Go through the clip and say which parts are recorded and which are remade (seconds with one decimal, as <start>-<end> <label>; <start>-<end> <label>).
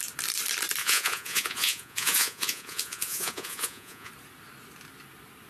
0.0-0.8 recorded; 0.8-4.1 remade; 4.1-5.5 recorded